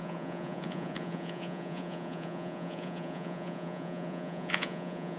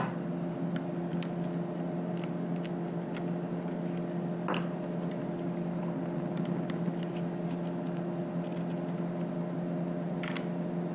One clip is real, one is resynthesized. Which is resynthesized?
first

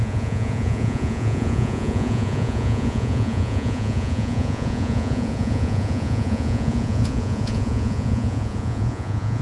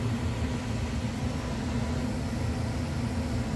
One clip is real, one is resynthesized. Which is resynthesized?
first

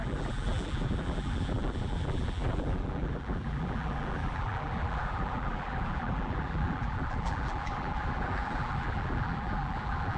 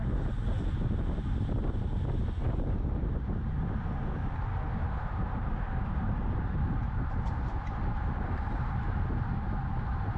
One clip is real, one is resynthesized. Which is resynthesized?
first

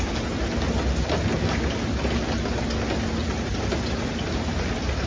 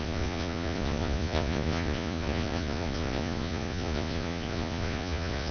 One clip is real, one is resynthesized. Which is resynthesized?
second